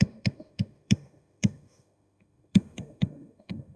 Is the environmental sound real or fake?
fake